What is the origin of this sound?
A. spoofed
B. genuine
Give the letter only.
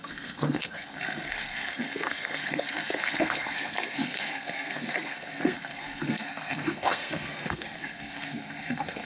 A